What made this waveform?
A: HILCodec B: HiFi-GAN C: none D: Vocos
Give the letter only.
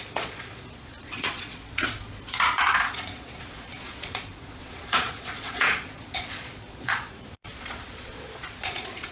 D